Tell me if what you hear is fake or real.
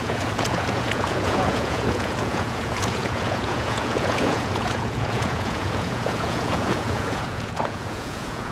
fake